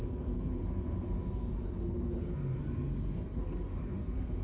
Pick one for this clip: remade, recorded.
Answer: remade